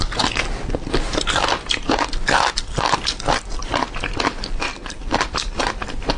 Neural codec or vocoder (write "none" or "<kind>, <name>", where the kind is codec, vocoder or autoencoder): vocoder, BigVGAN v2